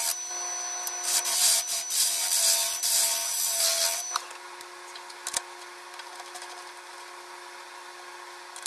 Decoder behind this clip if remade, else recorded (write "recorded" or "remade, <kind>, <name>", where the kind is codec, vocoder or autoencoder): recorded